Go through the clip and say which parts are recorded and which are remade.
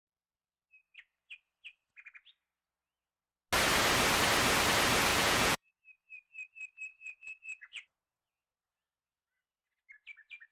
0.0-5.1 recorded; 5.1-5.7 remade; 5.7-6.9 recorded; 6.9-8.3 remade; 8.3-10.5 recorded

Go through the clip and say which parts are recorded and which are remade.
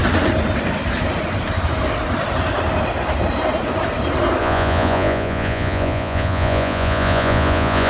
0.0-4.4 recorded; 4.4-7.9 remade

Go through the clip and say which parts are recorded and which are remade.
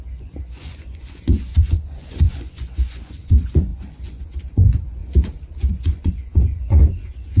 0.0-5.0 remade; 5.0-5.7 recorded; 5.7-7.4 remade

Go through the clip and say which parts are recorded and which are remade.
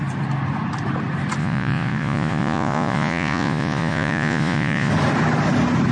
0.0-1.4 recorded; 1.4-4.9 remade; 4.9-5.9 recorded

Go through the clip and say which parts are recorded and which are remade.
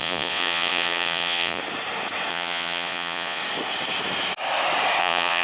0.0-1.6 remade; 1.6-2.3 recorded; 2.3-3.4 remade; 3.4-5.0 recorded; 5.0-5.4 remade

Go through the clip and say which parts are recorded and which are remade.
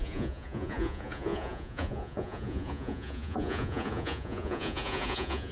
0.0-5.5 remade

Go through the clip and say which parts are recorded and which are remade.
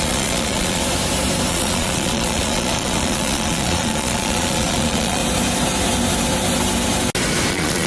0.0-0.8 remade; 0.8-1.5 recorded; 1.5-5.2 remade; 5.2-7.5 recorded; 7.5-7.9 remade